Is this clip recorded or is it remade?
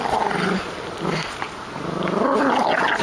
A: recorded